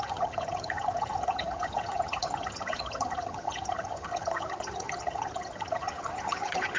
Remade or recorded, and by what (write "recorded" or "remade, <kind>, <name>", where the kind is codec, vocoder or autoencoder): remade, vocoder, HiFi-GAN